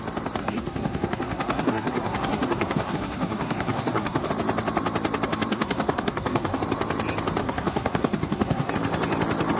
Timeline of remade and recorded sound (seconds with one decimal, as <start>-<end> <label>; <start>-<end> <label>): 0.0-0.4 recorded; 0.4-4.3 remade; 4.3-5.5 recorded; 5.5-6.6 remade; 6.6-7.4 recorded; 7.4-8.7 remade; 8.7-9.6 recorded